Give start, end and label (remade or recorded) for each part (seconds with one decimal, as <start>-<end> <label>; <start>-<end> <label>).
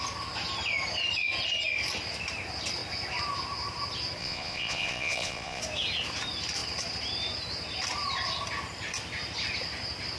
0.0-4.2 recorded; 4.2-5.6 remade; 5.6-10.2 recorded